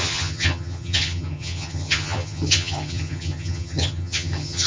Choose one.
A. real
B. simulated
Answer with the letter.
B